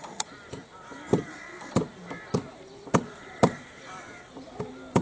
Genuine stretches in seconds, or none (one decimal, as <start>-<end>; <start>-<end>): 0.0-5.0